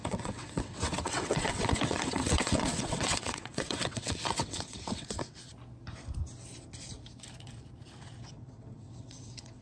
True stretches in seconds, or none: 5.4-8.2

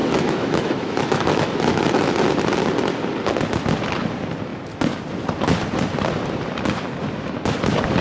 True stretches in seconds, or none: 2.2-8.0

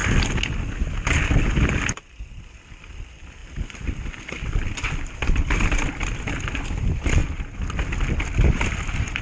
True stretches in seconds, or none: 0.0-2.3

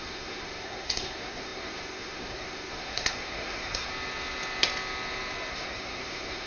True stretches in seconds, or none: 3.9-5.5

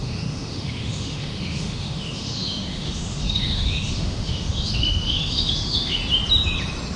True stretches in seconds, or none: 6.0-7.0

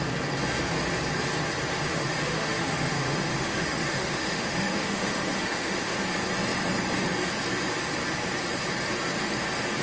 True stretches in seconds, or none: 0.0-1.9; 6.0-9.8

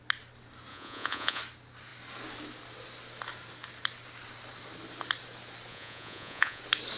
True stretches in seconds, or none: 0.0-0.7; 1.4-5.7; 6.6-7.0

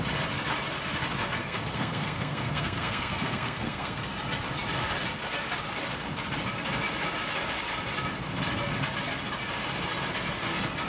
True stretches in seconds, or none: 0.0-1.4; 4.0-10.9